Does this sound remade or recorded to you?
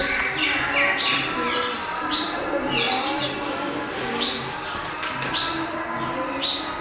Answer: recorded